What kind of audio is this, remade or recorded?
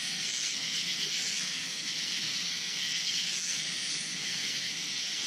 remade